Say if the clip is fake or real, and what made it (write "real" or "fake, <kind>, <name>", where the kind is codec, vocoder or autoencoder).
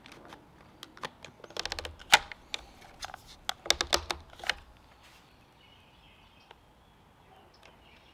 real